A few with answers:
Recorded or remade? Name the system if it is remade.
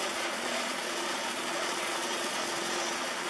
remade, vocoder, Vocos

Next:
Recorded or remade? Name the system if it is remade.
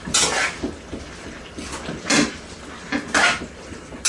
recorded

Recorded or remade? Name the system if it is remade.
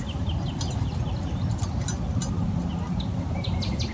recorded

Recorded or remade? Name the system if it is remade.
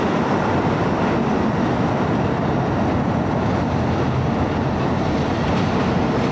recorded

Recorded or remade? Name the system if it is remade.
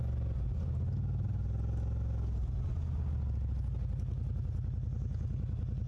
recorded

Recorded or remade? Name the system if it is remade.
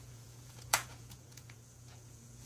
remade, vocoder, Vocos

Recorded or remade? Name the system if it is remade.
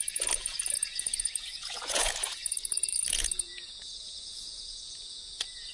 remade, vocoder, Vocos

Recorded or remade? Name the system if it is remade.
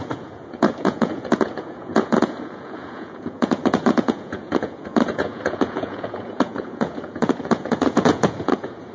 remade, vocoder, Vocos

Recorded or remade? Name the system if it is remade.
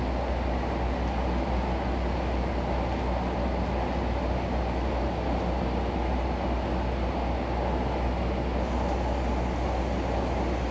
recorded